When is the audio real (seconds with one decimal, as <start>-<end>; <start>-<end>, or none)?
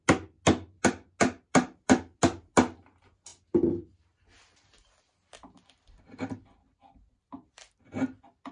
0.0-8.5